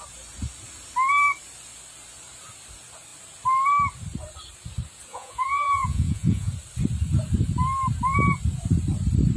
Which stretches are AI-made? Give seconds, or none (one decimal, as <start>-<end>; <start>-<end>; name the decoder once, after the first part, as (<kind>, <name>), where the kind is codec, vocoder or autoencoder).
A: 5.1-6.5 (vocoder, Vocos)